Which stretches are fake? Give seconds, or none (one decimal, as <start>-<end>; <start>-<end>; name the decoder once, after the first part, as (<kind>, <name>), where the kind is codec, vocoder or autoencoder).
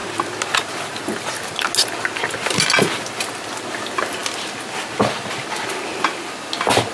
none